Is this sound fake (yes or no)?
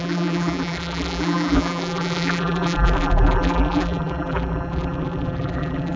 yes